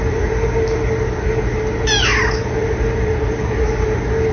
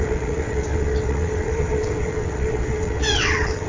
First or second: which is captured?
first